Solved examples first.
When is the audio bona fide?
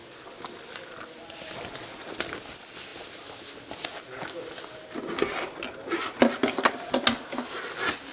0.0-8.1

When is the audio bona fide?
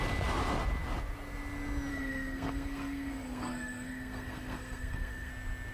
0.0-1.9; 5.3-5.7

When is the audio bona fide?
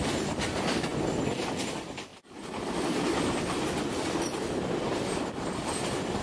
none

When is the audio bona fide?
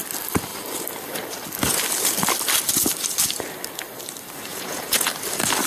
0.0-4.5; 5.1-5.7